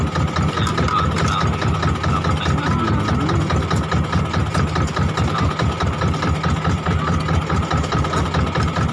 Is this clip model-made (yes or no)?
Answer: no